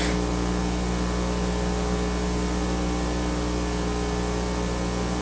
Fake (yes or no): no